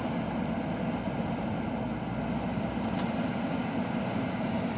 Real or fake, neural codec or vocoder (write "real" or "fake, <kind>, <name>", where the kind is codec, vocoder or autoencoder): real